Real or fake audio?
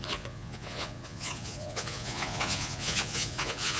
fake